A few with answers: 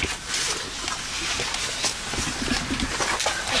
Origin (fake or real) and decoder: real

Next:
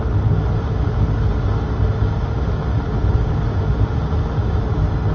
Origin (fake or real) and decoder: real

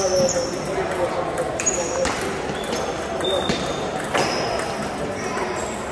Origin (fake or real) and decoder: real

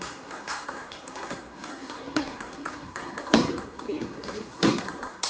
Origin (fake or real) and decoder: fake, codec, SNAC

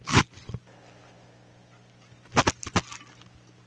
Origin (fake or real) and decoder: real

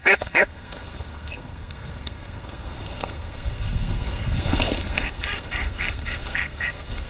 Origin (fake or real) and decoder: fake, codec, SNAC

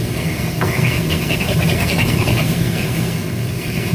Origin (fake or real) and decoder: fake, codec, SNAC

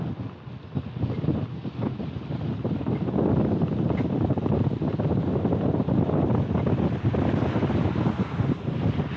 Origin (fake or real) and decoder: real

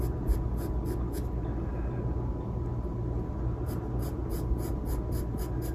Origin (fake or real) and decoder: real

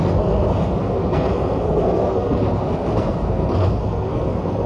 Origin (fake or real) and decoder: fake, codec, SNAC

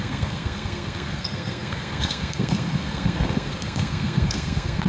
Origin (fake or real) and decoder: fake, codec, SNAC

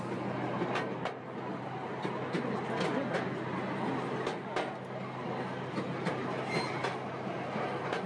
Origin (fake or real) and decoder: real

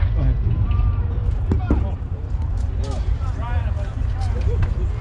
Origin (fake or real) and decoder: real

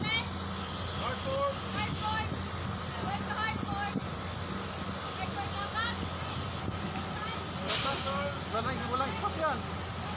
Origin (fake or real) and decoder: real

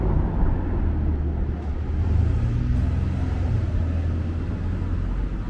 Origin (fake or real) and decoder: real